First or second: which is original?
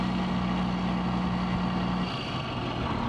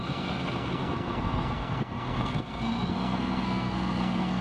first